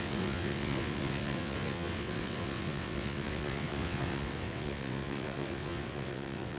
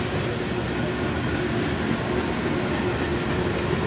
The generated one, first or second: first